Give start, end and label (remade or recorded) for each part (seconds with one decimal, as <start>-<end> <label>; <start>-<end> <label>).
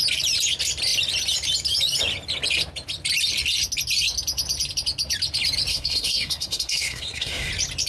0.0-5.7 recorded; 5.7-7.5 remade; 7.5-7.9 recorded